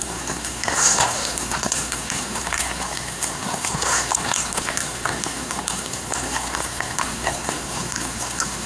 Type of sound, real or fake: fake